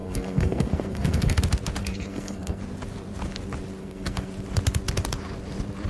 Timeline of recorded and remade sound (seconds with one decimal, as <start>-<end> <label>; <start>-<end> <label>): 0.0-1.4 remade; 1.4-1.8 recorded; 1.8-2.6 remade; 2.6-3.8 recorded; 3.8-4.3 remade; 4.3-5.9 recorded